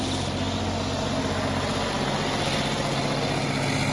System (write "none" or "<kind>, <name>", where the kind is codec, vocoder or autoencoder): none